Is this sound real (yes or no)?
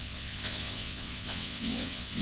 no